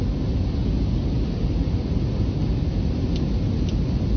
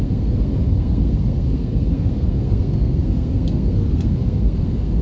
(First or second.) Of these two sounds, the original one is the first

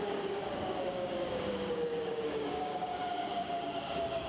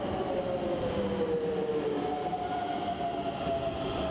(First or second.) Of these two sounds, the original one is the second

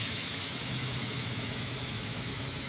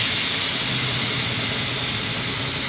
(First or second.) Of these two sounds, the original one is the second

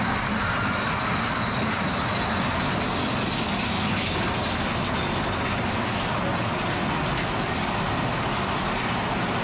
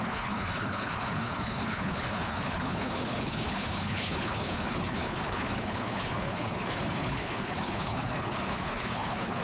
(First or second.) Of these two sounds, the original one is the first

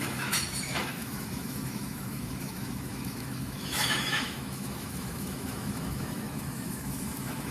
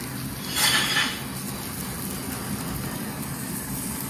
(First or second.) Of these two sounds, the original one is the second